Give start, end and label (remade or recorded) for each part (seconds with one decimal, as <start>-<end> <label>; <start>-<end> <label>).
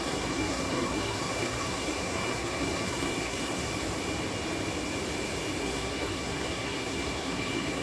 0.0-3.7 remade; 3.7-5.6 recorded; 5.6-7.8 remade